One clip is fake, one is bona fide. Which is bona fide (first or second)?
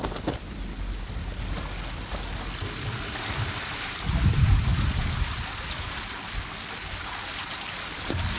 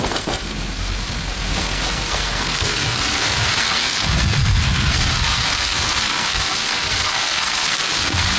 first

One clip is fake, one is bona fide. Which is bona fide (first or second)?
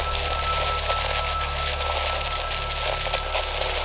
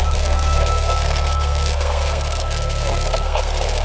first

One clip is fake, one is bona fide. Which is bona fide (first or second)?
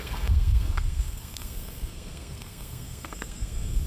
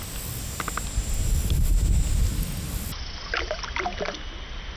second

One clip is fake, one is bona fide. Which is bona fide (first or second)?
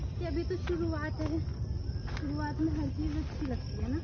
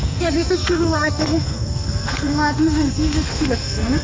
first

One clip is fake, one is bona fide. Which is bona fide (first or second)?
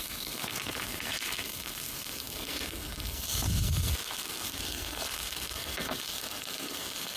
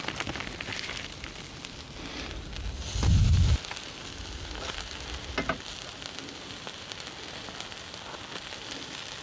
second